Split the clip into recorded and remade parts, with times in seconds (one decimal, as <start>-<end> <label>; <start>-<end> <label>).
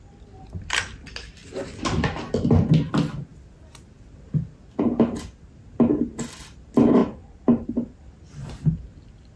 0.0-3.3 recorded; 3.3-4.8 remade; 4.8-7.0 recorded; 7.0-7.7 remade; 7.7-9.4 recorded